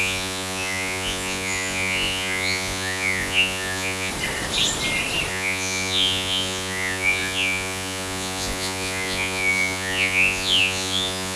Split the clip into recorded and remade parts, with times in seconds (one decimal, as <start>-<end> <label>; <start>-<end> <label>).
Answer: 0.0-4.1 remade; 4.1-5.3 recorded; 5.3-11.4 remade

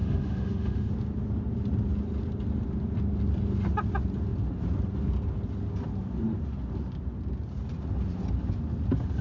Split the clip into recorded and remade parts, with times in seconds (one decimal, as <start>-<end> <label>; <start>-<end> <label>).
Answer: 0.0-0.9 remade; 0.9-9.2 recorded

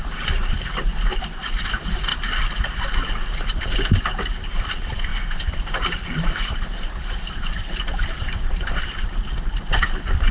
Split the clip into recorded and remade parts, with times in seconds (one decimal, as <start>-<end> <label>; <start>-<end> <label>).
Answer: 0.0-0.9 remade; 0.9-5.1 recorded; 5.1-9.2 remade; 9.2-10.3 recorded

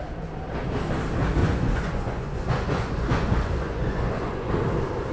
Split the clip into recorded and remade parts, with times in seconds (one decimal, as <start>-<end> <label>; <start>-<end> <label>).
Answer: 0.0-1.4 recorded; 1.4-4.5 remade; 4.5-5.1 recorded

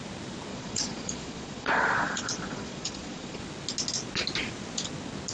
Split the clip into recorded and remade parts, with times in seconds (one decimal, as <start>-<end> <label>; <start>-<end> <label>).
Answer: 0.0-0.5 recorded; 0.5-3.4 remade; 3.4-5.3 recorded